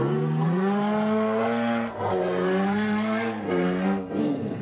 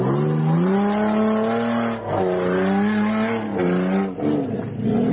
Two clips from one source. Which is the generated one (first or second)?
first